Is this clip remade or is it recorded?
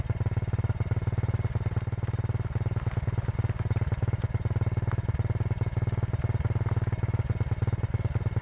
recorded